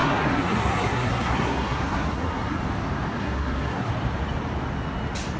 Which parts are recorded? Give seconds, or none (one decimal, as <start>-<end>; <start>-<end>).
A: 2.6-3.2; 3.9-5.4